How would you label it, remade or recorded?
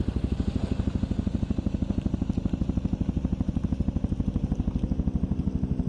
recorded